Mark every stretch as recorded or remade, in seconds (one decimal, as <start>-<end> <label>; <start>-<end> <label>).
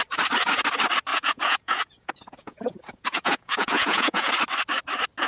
0.0-1.1 recorded; 1.1-4.3 remade; 4.3-5.3 recorded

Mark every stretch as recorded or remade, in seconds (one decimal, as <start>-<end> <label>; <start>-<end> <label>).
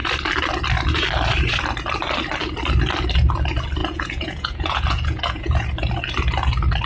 0.0-3.8 recorded; 3.8-5.7 remade; 5.7-6.9 recorded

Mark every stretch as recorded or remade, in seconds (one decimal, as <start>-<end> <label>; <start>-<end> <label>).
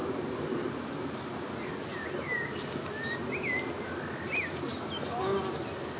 0.0-6.0 recorded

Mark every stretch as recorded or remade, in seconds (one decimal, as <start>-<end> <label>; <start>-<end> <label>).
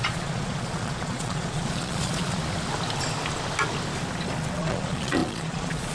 0.0-2.4 remade; 2.4-4.6 recorded; 4.6-5.9 remade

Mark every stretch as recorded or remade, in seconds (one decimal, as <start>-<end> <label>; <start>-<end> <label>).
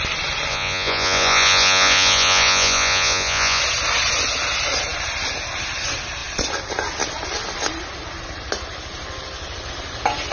0.0-0.5 recorded; 0.5-3.6 remade; 3.6-10.3 recorded